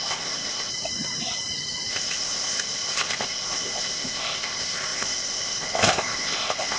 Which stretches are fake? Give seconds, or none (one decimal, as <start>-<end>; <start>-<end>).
0.0-0.7; 1.9-6.8